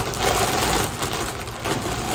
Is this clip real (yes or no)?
yes